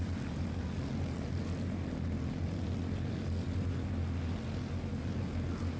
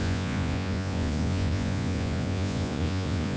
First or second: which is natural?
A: first